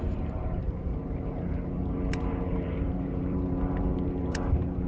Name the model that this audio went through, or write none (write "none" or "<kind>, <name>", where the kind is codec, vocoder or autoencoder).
vocoder, BigVGAN v2